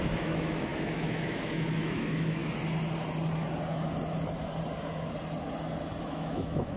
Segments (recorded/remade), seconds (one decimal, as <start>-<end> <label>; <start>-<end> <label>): 0.0-2.4 remade; 2.4-6.0 recorded; 6.0-6.8 remade

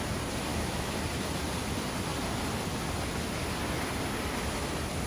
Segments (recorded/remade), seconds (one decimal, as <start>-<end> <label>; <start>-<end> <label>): 0.0-0.5 recorded; 0.5-1.0 remade; 1.0-5.1 recorded

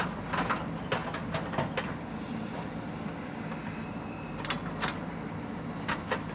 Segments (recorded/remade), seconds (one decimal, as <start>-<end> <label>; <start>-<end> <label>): 0.0-6.3 recorded

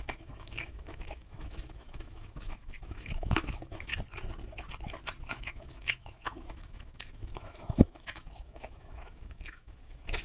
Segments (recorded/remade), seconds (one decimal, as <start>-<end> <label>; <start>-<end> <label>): 0.0-3.9 remade; 3.9-5.2 recorded; 5.2-10.2 remade

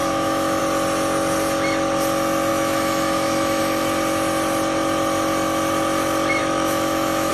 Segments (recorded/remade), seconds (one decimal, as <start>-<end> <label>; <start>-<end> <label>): 0.0-0.6 remade; 0.6-2.5 recorded; 2.5-3.6 remade; 3.6-6.4 recorded; 6.4-7.3 remade